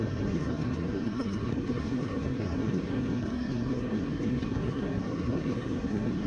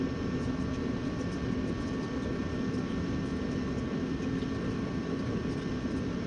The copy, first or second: first